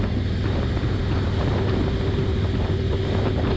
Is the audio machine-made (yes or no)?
no